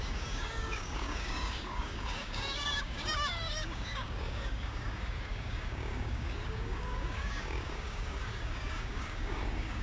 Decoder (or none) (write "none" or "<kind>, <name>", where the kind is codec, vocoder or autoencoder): codec, DAC